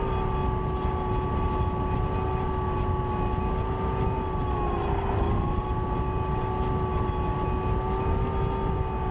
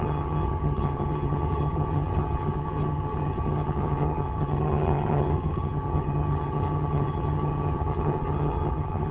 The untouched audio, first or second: first